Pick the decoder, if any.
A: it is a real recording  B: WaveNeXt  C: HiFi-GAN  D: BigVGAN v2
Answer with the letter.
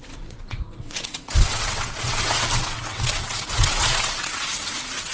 B